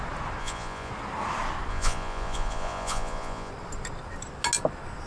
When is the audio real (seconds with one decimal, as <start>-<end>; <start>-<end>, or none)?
0.0-0.4; 0.9-1.7; 3.5-5.1